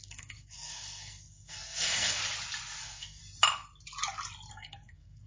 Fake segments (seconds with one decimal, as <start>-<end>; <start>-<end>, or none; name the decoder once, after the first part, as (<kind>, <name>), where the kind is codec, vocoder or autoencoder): 0.0-2.2 (codec, SNAC); 2.8-3.2; 4.5-5.3